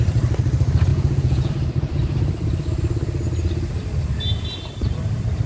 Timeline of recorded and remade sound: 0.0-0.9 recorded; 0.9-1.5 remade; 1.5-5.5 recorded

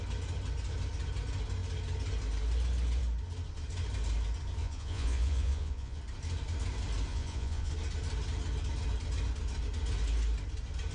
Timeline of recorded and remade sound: 0.0-4.6 recorded; 4.6-6.0 remade; 6.0-7.1 recorded; 7.1-7.7 remade; 7.7-10.9 recorded

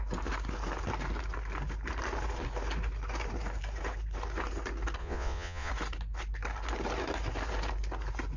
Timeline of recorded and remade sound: 0.0-5.0 recorded; 5.0-5.7 remade; 5.7-8.4 recorded

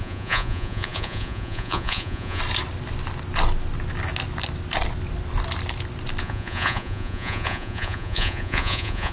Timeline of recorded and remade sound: 0.0-2.4 remade; 2.4-6.2 recorded; 6.2-9.1 remade